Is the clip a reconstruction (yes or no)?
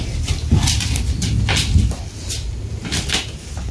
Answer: no